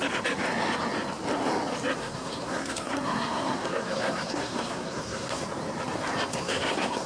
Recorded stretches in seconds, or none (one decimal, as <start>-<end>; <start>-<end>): 0.0-2.0; 5.4-6.3